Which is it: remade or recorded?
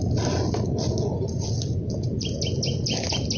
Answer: recorded